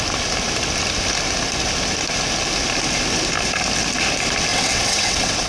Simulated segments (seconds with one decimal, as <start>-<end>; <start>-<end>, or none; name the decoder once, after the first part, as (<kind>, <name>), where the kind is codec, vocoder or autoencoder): 4.5-5.5 (vocoder, WaveNeXt)